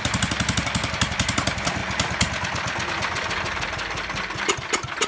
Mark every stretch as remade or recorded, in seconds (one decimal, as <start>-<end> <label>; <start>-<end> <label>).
0.0-5.1 recorded